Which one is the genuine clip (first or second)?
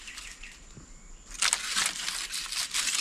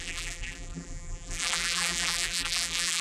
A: first